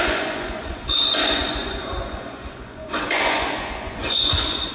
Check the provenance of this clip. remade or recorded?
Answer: remade